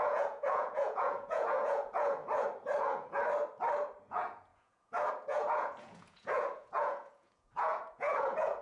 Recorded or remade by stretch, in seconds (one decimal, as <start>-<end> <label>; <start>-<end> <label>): 0.0-2.2 remade; 2.2-2.8 recorded; 2.8-3.2 remade; 3.2-4.1 recorded; 4.1-8.6 remade